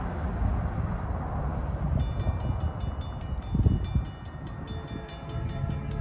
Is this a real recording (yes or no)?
yes